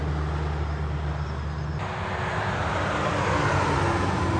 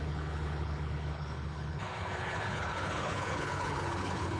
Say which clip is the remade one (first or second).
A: second